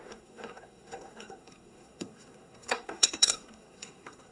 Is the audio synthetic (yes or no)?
yes